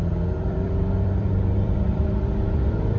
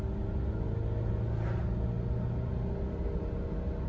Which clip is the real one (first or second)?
second